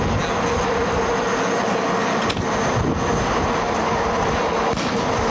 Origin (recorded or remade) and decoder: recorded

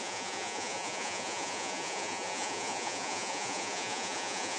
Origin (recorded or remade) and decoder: remade, vocoder, Vocos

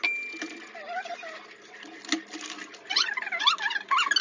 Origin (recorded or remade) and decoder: recorded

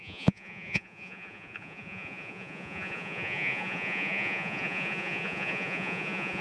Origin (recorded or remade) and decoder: remade, vocoder, Vocos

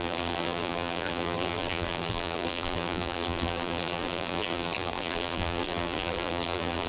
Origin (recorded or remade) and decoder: remade, vocoder, BigVGAN v2